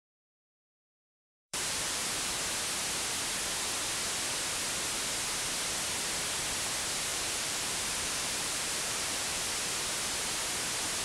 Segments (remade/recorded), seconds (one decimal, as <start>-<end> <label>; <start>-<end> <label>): 0.0-0.5 recorded; 0.5-2.3 remade; 2.3-7.1 recorded; 7.1-9.4 remade; 9.4-11.0 recorded